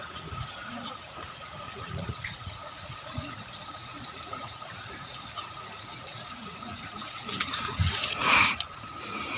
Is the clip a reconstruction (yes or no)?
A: yes